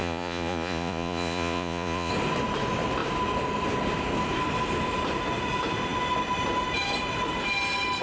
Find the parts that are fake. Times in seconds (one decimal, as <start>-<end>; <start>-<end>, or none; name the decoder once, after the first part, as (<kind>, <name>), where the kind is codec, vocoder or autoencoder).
0.0-2.1 (vocoder, Vocos)